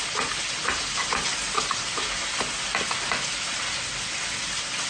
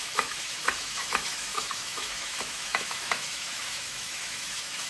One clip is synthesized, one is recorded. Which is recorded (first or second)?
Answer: first